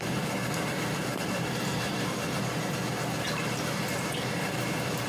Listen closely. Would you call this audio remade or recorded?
remade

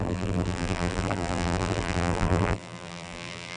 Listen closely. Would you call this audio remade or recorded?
remade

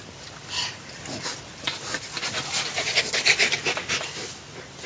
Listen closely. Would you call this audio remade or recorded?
recorded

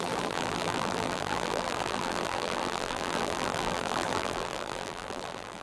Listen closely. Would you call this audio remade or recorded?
remade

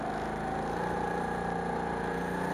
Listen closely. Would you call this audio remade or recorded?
recorded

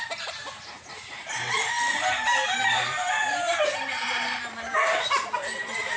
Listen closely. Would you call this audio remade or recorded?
remade